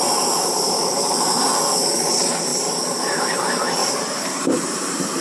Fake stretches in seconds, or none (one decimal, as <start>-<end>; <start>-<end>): 0.0-1.5; 2.1-5.2